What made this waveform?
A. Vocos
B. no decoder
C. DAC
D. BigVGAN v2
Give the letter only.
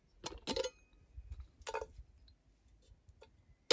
B